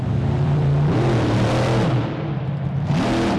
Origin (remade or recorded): remade